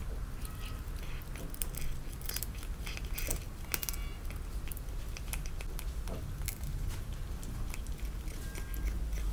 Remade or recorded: recorded